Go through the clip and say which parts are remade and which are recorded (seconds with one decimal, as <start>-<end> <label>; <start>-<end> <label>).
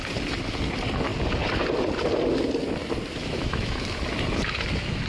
0.0-3.2 recorded; 3.2-4.0 remade; 4.0-5.1 recorded